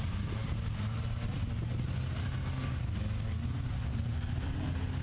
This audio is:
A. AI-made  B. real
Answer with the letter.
B